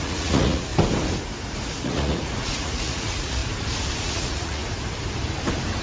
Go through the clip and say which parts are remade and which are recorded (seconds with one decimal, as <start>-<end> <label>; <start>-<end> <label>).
0.0-0.7 remade; 0.7-1.8 recorded; 1.8-3.4 remade; 3.4-4.0 recorded; 4.0-4.6 remade; 4.6-5.8 recorded